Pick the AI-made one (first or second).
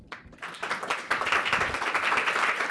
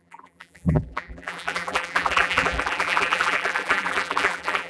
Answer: second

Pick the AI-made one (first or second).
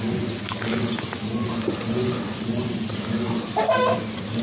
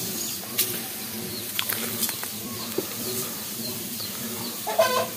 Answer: second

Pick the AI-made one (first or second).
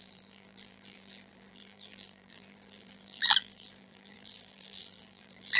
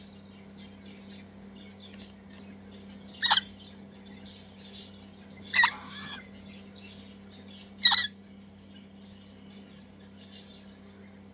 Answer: first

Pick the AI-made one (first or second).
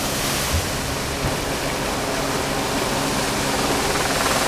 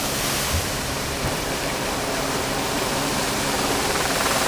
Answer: second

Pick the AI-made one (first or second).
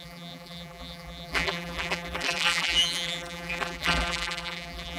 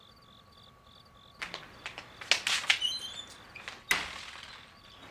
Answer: first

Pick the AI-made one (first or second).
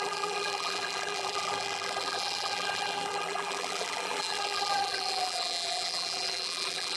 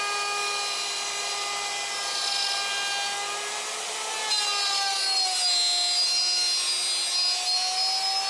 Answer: first